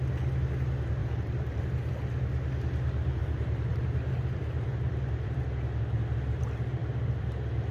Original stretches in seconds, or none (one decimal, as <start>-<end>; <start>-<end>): 0.0-1.0; 1.6-3.2; 5.4-6.8